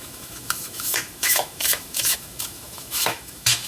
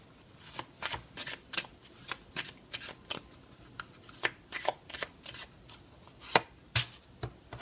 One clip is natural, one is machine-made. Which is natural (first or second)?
second